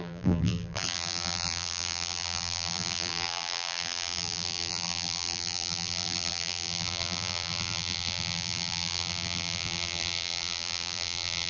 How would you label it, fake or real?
fake